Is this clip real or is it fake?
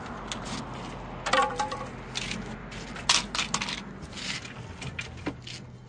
real